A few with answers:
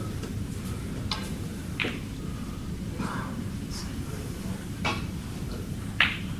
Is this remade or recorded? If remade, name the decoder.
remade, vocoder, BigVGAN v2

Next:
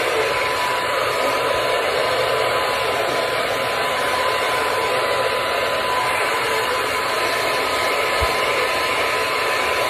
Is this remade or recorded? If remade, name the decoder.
remade, vocoder, BigVGAN v2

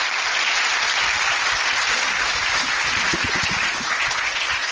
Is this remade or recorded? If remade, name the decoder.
recorded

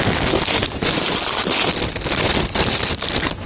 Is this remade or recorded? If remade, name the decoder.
recorded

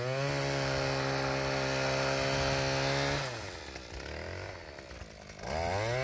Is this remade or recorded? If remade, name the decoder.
recorded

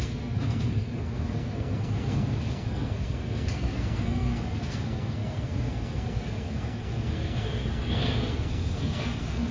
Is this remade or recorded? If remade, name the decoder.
remade, codec, SNAC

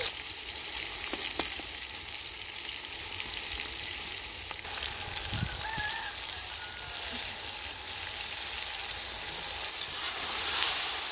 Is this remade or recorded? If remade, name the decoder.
recorded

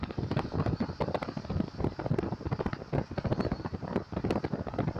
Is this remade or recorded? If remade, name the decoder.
recorded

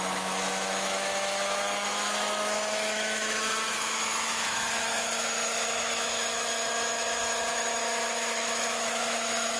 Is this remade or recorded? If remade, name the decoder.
remade, autoencoder, DAC-VAE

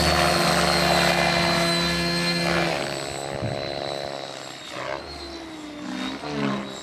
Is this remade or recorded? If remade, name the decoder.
recorded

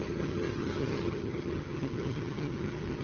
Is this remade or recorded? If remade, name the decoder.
remade, vocoder, HiFi-GAN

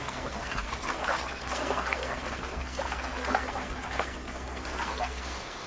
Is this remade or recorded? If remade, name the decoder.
remade, codec, SNAC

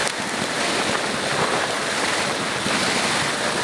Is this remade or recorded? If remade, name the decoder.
recorded